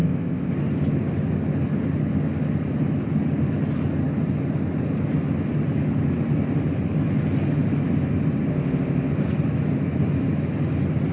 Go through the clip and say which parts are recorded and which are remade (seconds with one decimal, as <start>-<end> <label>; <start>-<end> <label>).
0.0-0.5 remade; 0.5-8.5 recorded; 8.5-9.1 remade; 9.1-11.1 recorded